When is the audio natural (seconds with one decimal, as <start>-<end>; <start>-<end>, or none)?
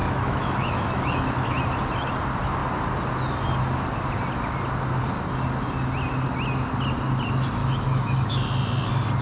1.6-7.6; 8.4-9.2